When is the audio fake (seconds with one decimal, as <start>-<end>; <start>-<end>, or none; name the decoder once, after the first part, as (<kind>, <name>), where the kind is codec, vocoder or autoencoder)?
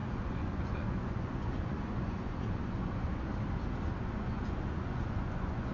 0.0-3.3 (vocoder, Vocos); 4.0-5.7